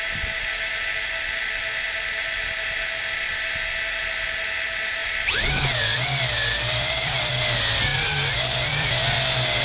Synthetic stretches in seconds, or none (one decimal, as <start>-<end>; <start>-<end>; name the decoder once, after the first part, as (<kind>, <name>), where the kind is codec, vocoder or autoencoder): 5.0-7.4 (vocoder, BigVGAN v2); 7.9-8.9